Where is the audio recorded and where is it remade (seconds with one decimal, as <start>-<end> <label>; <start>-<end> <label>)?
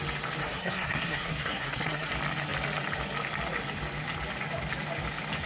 0.0-0.4 recorded; 0.4-2.1 remade; 2.1-5.5 recorded